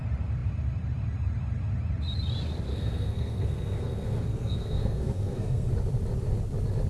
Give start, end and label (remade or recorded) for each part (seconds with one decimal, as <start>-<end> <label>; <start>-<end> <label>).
0.0-2.7 recorded; 2.7-5.7 remade; 5.7-6.9 recorded